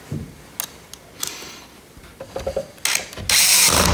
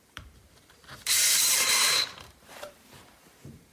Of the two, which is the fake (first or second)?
second